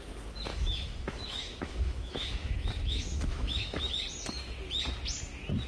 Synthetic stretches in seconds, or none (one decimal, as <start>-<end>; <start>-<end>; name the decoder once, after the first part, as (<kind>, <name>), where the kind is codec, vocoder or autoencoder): 0.5-3.9 (autoencoder, DAC-VAE)